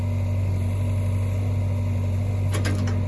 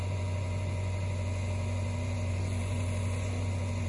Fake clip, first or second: second